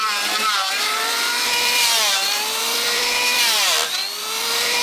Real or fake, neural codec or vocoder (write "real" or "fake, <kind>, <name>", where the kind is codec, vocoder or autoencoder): fake, vocoder, BigVGAN v2